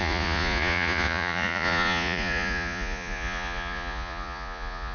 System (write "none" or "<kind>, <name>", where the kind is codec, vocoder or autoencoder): vocoder, Vocos